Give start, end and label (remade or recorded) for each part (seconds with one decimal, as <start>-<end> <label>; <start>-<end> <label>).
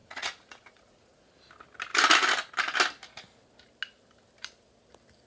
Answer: 0.0-1.4 remade; 1.4-5.3 recorded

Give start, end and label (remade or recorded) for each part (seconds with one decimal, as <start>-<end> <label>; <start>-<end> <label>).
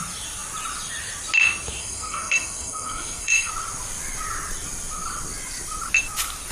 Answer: 0.0-1.8 recorded; 1.8-3.5 remade; 3.5-6.5 recorded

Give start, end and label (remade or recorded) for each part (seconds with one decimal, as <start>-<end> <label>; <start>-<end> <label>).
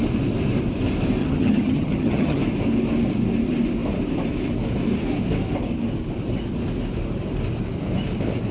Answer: 0.0-1.2 recorded; 1.2-2.4 remade; 2.4-8.5 recorded